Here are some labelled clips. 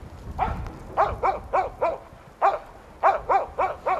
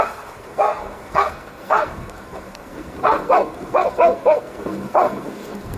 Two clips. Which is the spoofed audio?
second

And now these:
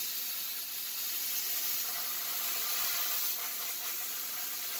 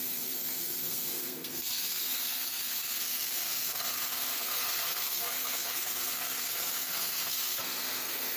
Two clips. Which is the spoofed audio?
second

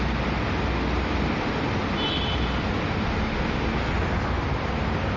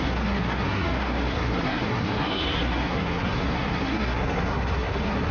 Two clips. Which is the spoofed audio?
second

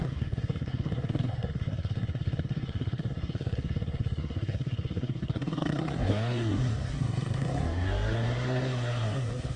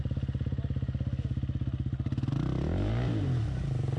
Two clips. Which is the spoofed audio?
first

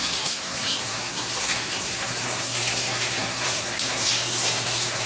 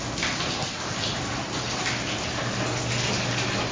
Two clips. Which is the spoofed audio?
first